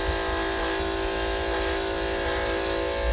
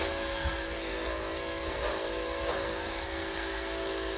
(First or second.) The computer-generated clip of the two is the second